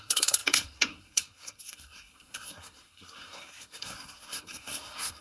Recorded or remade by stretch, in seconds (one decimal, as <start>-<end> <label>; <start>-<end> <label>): 0.0-5.2 remade